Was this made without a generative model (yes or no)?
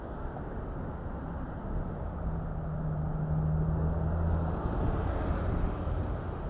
yes